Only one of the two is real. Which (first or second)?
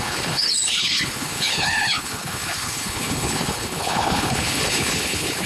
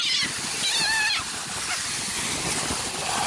second